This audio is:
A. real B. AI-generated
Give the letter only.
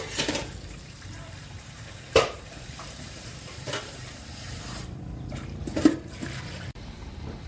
B